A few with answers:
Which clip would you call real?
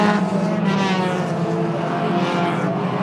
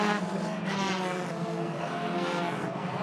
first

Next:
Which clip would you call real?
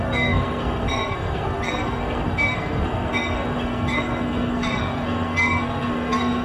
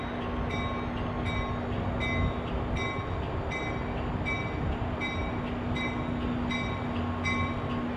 second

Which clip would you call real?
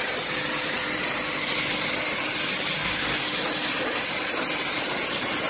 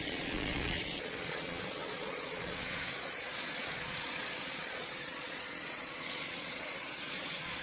first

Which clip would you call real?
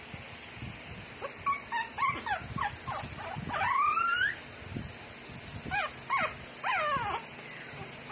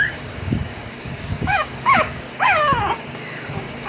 first